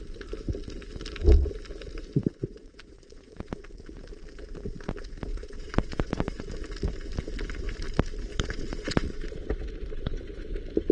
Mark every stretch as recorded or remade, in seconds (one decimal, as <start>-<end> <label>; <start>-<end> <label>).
0.0-2.4 recorded; 2.4-3.6 remade; 3.6-5.3 recorded; 5.3-6.4 remade; 6.4-8.3 recorded; 8.3-9.5 remade; 9.5-10.9 recorded